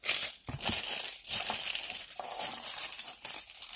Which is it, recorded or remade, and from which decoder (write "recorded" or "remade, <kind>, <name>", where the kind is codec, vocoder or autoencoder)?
remade, vocoder, BigVGAN v2